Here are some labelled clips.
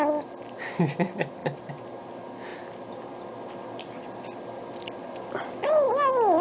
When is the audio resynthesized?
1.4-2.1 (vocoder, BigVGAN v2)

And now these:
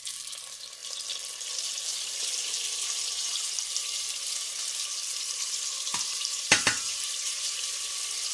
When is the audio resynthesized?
4.9-5.5 (vocoder, BigVGAN v2); 5.9-7.7

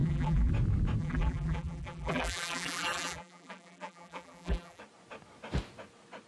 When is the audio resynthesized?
0.0-0.5 (vocoder, BigVGAN v2); 1.0-4.8

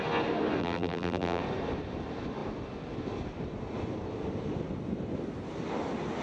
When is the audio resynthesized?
0.6-1.4 (vocoder, BigVGAN v2)

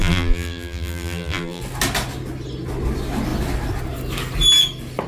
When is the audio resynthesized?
0.0-1.6 (vocoder, BigVGAN v2)

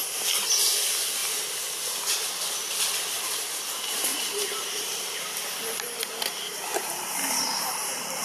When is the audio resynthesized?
4.1-5.3 (vocoder, BigVGAN v2); 6.7-8.2

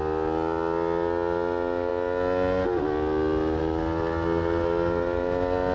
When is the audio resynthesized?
none